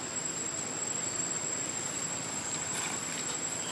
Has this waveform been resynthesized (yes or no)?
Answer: yes